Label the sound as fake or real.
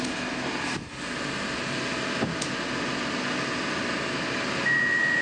real